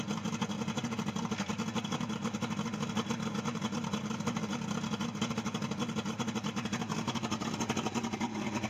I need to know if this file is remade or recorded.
recorded